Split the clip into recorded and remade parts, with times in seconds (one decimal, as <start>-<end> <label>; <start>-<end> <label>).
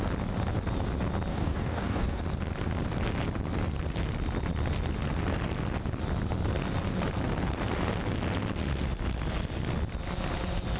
0.0-1.3 recorded; 1.3-2.2 remade; 2.2-10.8 recorded